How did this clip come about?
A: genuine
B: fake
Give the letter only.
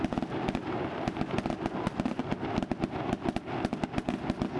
A